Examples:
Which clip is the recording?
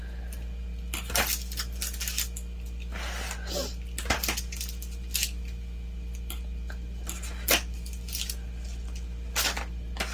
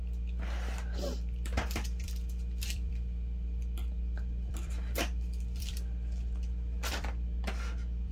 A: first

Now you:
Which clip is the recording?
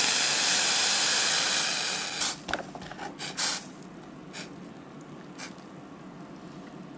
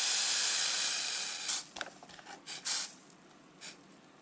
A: first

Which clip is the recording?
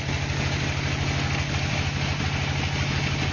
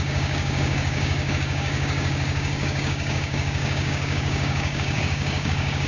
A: first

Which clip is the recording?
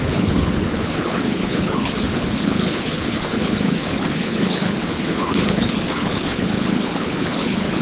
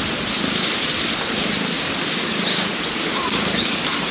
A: second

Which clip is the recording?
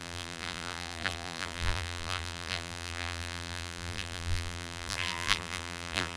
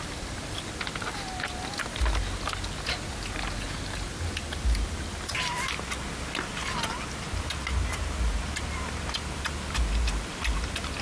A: second